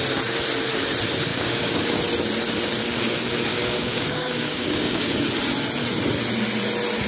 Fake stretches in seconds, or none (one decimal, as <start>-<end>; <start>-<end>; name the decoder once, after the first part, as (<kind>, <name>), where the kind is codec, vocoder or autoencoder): 1.3-2.0 (codec, DAC); 3.5-5.1